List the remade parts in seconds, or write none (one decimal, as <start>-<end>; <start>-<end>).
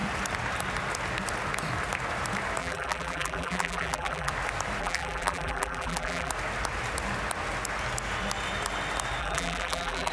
2.6-4.3; 4.8-6.3; 9.2-10.1